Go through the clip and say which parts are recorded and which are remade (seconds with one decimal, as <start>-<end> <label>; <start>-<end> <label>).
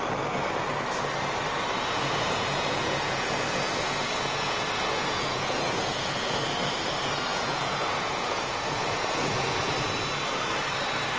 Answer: 0.0-1.8 recorded; 1.8-6.4 remade; 6.4-7.3 recorded; 7.3-9.7 remade; 9.7-11.2 recorded